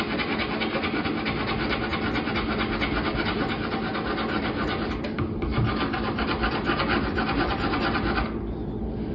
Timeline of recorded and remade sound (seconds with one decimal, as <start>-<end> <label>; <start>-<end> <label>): 0.0-9.1 recorded